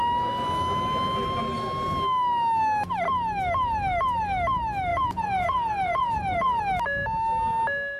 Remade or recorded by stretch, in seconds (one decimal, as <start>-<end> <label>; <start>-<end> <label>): 0.0-4.9 recorded; 4.9-6.6 remade; 6.6-8.0 recorded